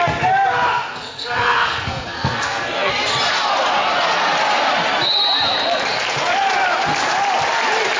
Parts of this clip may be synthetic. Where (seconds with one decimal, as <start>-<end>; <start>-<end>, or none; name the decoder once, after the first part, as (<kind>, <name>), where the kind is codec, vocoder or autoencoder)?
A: 0.9-2.9 (codec, SNAC)